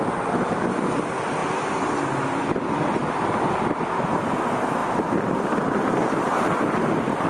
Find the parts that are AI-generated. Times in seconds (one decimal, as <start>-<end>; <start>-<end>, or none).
1.4-4.3; 4.8-5.4

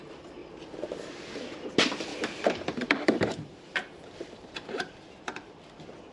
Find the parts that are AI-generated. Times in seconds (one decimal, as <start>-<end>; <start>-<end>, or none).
0.4-1.2; 2.1-6.1

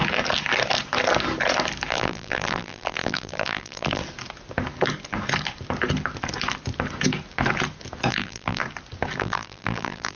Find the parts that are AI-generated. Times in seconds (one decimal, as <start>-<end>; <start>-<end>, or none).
1.9-4.0; 8.1-8.6; 9.2-10.2

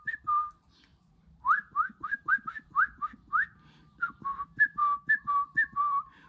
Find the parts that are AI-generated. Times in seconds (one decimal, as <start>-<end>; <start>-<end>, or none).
0.0-0.9; 2.3-4.8; 5.8-6.3